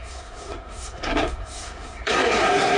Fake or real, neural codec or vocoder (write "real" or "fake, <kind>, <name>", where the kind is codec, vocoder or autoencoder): fake, codec, SNAC